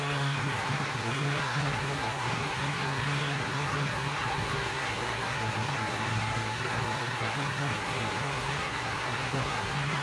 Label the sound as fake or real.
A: fake